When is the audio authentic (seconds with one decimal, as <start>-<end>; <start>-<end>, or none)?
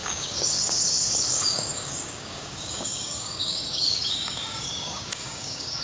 none